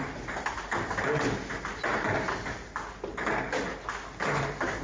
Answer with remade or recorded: recorded